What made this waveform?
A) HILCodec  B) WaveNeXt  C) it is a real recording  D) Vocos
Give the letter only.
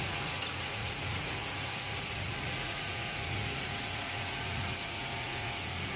D